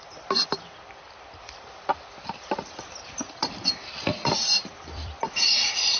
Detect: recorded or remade remade